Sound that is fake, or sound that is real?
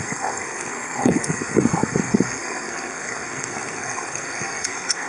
fake